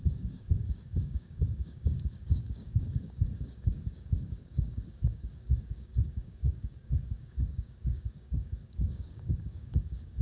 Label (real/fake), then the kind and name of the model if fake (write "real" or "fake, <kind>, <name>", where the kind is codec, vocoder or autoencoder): fake, codec, DAC